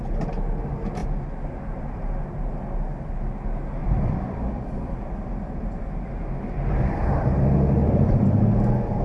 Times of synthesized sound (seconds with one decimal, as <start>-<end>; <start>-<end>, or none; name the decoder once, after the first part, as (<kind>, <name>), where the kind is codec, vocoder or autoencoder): 3.8-6.1 (vocoder, BigVGAN v2); 7.8-8.4